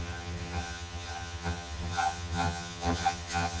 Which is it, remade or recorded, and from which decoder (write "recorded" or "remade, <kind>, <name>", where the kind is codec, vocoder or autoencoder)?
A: remade, vocoder, HiFi-GAN